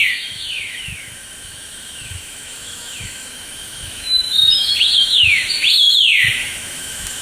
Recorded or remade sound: remade